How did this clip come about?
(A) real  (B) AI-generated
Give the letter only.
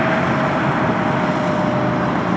A